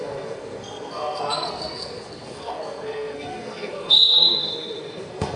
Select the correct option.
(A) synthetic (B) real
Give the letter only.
A